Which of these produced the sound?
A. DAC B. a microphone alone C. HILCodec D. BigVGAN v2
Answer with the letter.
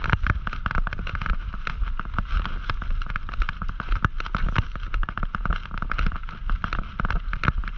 B